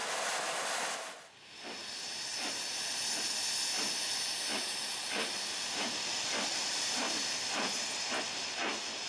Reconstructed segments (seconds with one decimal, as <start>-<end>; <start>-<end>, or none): 2.3-3.0; 5.0-7.9